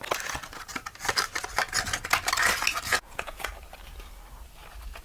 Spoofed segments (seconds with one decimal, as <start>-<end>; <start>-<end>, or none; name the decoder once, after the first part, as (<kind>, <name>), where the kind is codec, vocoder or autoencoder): 2.9-3.5 (vocoder, Vocos)